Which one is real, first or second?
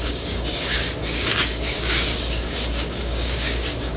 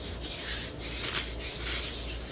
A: second